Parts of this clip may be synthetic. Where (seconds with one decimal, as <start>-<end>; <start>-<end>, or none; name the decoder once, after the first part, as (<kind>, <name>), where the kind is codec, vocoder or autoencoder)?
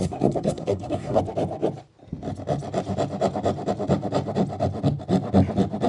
0.0-1.2 (codec, SNAC)